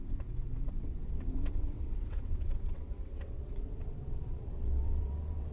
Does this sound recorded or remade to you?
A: remade